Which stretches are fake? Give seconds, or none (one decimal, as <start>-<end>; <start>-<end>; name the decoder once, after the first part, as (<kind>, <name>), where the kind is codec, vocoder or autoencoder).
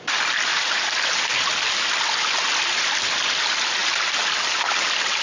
0.5-1.3 (vocoder, BigVGAN v2)